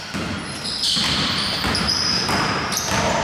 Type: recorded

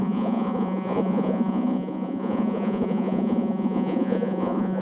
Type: remade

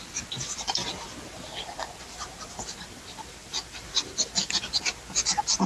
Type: recorded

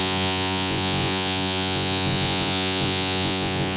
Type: remade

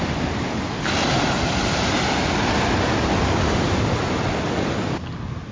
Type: recorded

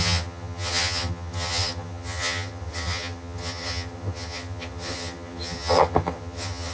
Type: remade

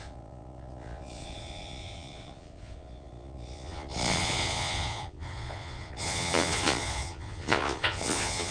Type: remade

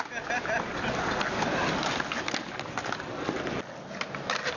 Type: recorded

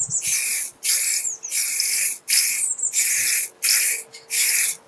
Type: recorded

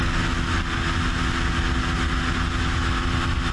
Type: recorded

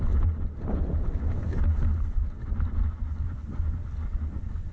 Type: recorded